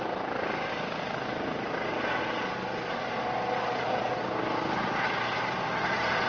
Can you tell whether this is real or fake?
real